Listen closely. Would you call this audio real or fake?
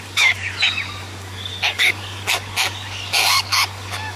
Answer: fake